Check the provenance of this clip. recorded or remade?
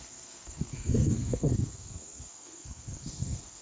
remade